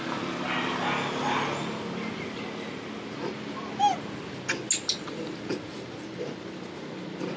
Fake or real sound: real